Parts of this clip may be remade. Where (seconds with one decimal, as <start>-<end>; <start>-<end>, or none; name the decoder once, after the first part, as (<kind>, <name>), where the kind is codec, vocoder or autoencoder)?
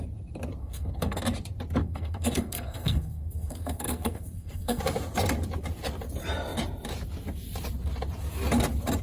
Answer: 0.6-1.2 (codec, SNAC); 1.8-4.8